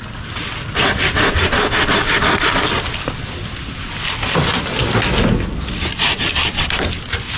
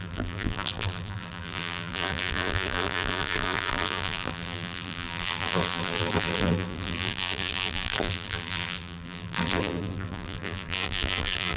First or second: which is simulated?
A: second